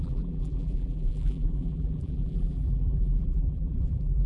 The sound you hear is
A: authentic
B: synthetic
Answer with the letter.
B